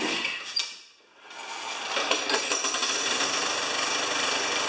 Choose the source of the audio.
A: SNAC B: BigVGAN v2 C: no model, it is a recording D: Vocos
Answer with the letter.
C